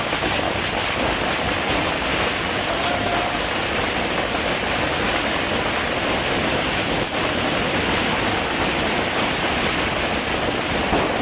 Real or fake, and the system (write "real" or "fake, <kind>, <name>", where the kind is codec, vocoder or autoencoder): real